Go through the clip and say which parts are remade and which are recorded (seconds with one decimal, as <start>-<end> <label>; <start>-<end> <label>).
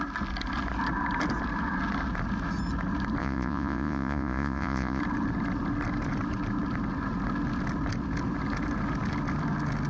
0.0-3.2 recorded; 3.2-5.0 remade; 5.0-9.9 recorded